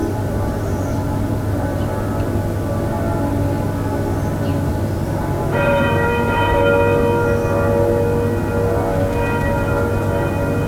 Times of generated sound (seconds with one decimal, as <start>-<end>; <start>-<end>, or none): 0.0-1.9; 4.5-6.6